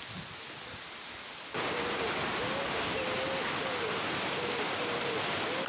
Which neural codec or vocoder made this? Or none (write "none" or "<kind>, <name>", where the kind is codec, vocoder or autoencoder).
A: none